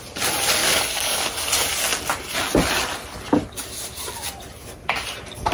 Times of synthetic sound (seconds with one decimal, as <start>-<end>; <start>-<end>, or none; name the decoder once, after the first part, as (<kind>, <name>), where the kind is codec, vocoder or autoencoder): 0.6-1.3 (codec, DAC)